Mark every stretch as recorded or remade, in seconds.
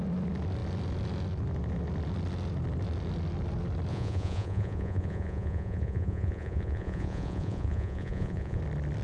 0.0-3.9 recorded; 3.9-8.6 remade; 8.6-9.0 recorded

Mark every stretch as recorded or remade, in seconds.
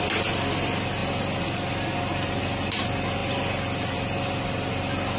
0.0-5.2 recorded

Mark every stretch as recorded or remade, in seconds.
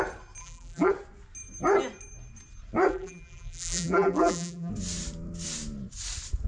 0.0-0.4 recorded; 0.4-0.9 remade; 0.9-2.9 recorded; 2.9-4.7 remade; 4.7-6.5 recorded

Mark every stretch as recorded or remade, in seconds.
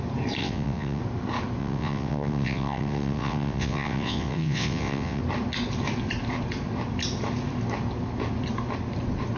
0.0-0.4 recorded; 0.4-1.0 remade; 1.0-1.6 recorded; 1.6-5.2 remade; 5.2-9.4 recorded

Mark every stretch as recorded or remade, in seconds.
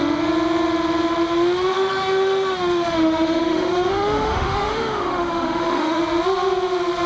0.0-1.7 recorded; 1.7-6.0 remade; 6.0-7.1 recorded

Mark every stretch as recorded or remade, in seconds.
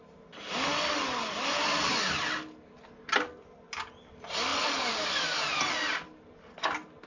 0.0-7.1 recorded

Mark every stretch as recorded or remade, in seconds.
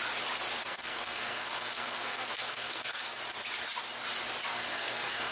0.0-0.6 recorded; 0.6-3.2 remade; 3.2-4.5 recorded; 4.5-5.3 remade